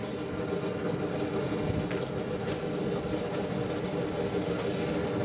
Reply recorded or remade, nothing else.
recorded